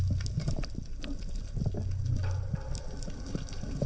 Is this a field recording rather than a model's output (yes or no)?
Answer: yes